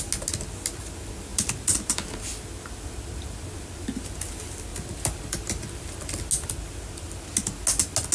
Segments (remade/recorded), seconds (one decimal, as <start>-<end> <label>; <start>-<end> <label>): 0.0-1.3 recorded; 1.3-4.1 remade; 4.1-4.7 recorded; 4.7-6.1 remade; 6.1-8.1 recorded